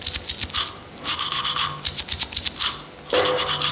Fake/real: real